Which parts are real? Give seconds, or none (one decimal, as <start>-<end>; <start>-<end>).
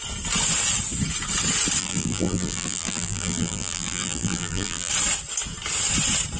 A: 0.0-1.8; 4.9-6.4